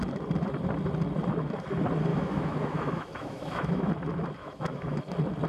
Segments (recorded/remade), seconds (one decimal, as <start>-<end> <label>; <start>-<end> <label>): 0.0-2.1 recorded; 2.1-3.9 remade; 3.9-4.4 recorded; 4.4-5.0 remade; 5.0-5.5 recorded

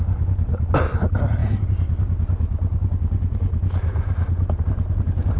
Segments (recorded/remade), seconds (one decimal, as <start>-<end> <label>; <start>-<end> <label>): 0.0-5.4 recorded